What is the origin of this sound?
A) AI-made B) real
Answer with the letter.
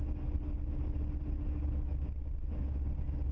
B